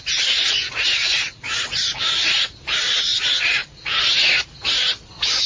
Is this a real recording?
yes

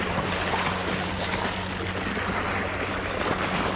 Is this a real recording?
yes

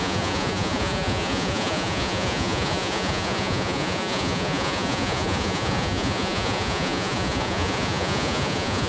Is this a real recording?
no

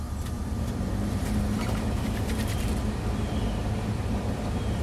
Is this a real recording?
no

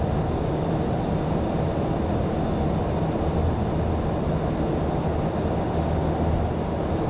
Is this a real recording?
yes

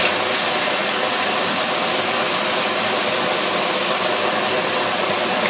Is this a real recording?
yes